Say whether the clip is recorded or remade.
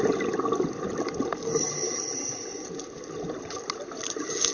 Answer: recorded